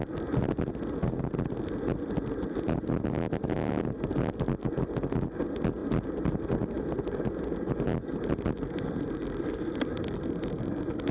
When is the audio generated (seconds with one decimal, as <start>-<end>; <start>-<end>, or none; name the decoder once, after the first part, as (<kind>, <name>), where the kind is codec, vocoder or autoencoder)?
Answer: none

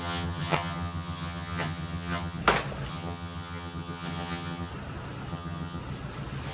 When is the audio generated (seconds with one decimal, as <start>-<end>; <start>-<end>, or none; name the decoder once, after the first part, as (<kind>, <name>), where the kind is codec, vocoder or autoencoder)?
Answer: 0.0-2.4 (vocoder, HiFi-GAN); 2.9-4.7; 5.3-5.8